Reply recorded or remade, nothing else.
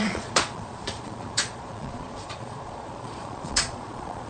remade